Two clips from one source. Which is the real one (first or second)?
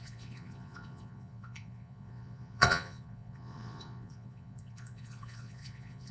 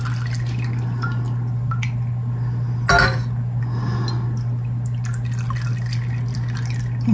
second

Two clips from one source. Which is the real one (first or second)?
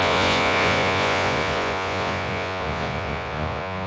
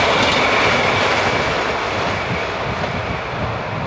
second